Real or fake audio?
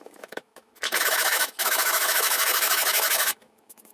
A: fake